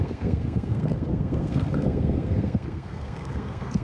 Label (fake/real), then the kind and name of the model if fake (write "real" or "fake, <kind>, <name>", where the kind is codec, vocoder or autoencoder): fake, codec, SNAC